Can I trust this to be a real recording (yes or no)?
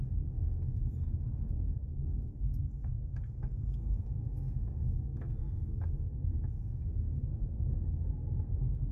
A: no